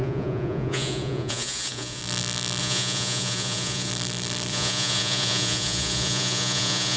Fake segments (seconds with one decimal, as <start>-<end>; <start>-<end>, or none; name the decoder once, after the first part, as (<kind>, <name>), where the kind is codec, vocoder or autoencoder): 0.0-2.0 (vocoder, Vocos); 2.6-3.9; 4.5-7.0